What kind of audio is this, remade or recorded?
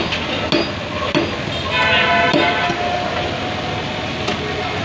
recorded